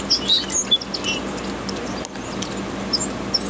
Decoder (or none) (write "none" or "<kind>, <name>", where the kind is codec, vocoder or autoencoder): none